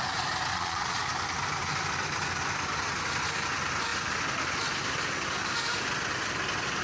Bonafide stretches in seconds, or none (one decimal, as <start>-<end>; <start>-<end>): 0.0-0.5; 1.0-6.8